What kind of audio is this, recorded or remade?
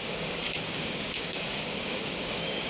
remade